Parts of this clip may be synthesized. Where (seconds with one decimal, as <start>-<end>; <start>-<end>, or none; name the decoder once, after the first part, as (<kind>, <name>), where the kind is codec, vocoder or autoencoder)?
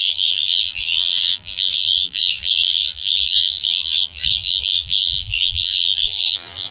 0.0-6.7 (vocoder, BigVGAN v2)